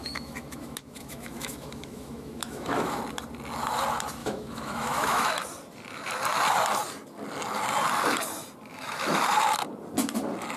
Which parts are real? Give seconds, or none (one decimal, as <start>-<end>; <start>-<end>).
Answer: 3.0-4.2; 5.3-8.7; 9.2-10.6